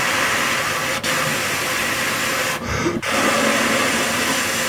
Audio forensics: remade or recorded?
recorded